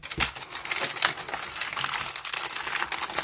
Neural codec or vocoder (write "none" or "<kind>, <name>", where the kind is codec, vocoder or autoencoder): none